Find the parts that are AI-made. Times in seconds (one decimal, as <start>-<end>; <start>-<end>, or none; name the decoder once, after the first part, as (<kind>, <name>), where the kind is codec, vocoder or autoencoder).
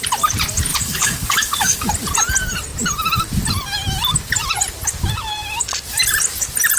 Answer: 0.7-1.9 (codec, DAC)